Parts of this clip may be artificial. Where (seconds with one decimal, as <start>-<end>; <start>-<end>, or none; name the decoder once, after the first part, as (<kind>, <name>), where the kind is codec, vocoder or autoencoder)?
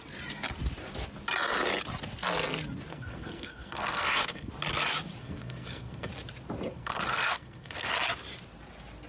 2.9-4.5 (codec, SNAC); 5.2-6.1; 6.7-7.9